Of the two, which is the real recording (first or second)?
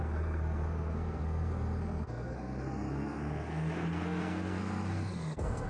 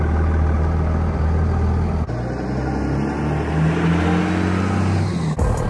second